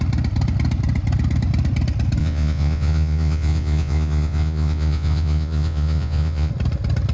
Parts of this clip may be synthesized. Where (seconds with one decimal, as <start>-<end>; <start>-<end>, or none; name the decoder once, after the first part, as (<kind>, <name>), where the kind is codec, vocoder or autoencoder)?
2.2-6.5 (vocoder, Vocos)